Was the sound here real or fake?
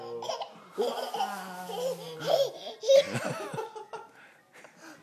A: real